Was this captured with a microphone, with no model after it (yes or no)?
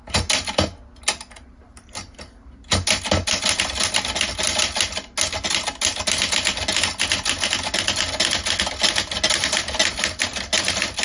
yes